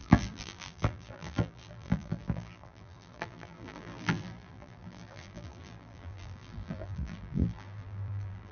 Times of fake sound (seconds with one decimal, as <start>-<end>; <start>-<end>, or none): 0.0-8.5